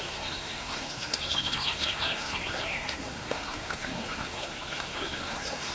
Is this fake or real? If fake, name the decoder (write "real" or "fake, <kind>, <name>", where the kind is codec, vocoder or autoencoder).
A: fake, codec, SNAC